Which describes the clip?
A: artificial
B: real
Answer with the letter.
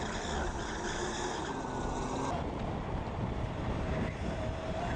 B